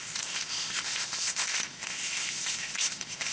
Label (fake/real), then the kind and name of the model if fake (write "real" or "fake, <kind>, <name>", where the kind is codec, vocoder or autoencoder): fake, codec, ZipCodec